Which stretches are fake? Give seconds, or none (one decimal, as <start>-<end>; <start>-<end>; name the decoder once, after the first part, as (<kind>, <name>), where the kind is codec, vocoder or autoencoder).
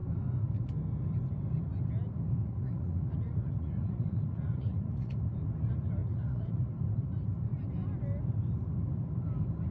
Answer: 2.4-5.2 (vocoder, Vocos); 6.0-6.7